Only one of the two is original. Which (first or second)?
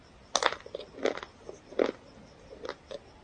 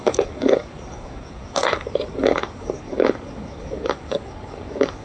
first